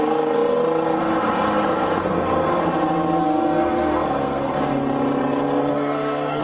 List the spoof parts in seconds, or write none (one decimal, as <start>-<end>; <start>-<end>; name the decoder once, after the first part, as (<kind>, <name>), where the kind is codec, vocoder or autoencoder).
2.0-2.6 (codec, SNAC); 3.2-4.5; 5.7-6.4